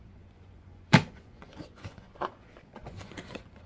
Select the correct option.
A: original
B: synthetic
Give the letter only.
B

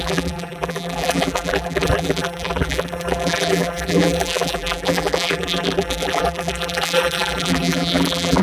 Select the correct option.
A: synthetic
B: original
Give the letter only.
A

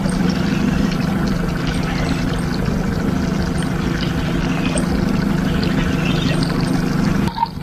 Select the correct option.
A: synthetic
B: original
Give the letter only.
B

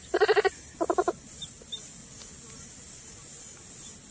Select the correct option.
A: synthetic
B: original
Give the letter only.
B